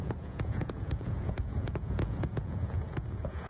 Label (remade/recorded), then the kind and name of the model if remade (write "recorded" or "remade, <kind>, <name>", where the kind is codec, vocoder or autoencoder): remade, vocoder, Vocos